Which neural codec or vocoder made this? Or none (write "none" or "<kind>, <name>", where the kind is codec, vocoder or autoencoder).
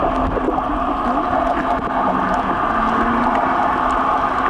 none